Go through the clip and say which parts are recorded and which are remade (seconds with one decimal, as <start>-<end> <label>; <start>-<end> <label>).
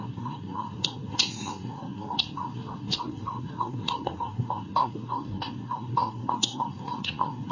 0.0-7.5 remade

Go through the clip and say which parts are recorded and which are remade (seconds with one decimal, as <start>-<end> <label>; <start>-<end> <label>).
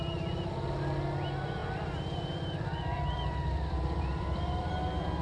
0.0-1.6 recorded; 1.6-4.7 remade; 4.7-5.2 recorded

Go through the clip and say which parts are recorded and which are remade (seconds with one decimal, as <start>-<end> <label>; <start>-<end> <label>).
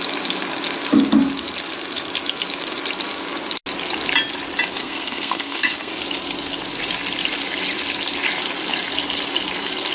0.0-4.8 recorded; 4.8-5.9 remade; 5.9-9.9 recorded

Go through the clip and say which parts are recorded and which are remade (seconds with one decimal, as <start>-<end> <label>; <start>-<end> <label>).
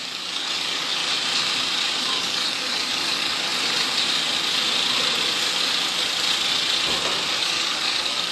0.0-1.0 remade; 1.0-2.0 recorded; 2.0-3.5 remade; 3.5-7.4 recorded; 7.4-8.3 remade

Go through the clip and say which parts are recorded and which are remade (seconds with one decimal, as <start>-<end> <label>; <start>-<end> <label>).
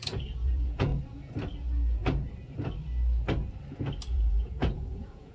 0.0-0.9 remade; 0.9-4.1 recorded; 4.1-5.3 remade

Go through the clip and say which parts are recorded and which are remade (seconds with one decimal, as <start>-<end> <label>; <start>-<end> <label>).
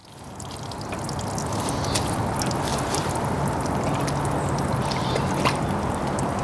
0.0-6.4 recorded